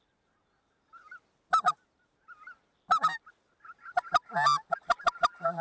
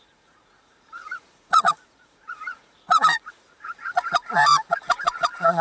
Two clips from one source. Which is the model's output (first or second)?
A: second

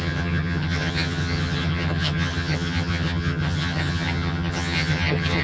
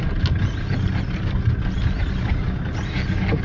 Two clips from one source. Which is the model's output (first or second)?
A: first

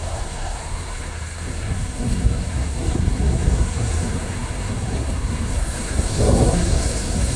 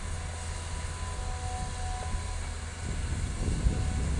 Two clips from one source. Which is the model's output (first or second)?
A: first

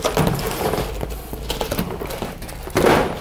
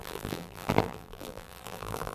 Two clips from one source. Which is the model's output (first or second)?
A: second